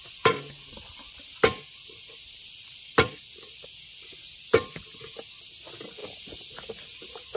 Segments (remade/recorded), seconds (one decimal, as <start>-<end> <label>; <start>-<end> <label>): 0.0-7.4 recorded